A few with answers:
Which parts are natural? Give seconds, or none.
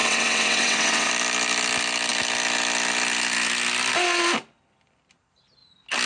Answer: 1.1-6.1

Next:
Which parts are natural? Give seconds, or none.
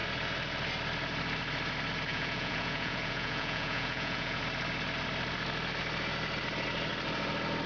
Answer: 0.0-2.1; 4.4-7.7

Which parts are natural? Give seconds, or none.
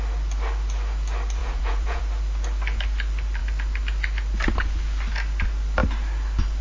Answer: 0.0-1.4; 2.0-6.6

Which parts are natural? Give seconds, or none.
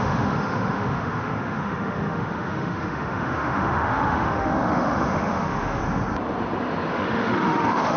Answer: 5.8-6.9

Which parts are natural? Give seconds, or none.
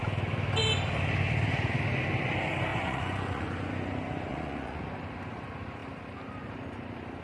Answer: 0.0-2.7; 3.7-4.3; 4.8-7.2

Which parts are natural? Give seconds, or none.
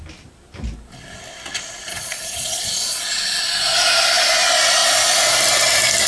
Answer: 0.0-1.9; 3.4-6.1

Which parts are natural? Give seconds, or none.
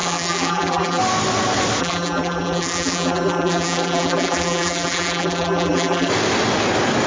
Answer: 1.0-1.8; 6.1-7.1